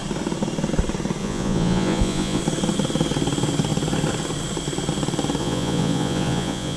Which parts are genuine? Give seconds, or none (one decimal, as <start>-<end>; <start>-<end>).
0.0-1.2; 2.4-5.4